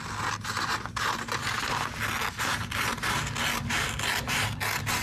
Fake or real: real